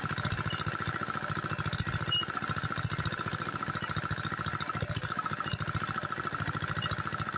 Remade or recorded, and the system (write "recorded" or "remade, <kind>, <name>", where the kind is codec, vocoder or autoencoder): recorded